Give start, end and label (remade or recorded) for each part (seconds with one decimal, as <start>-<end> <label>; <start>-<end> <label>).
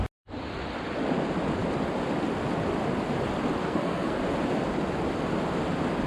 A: 0.0-3.6 recorded; 3.6-4.2 remade; 4.2-6.1 recorded